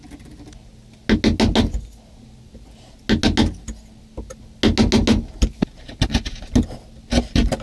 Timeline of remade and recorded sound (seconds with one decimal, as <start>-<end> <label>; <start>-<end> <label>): 0.0-7.6 recorded